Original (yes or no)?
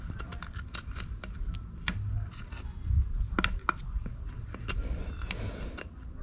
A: yes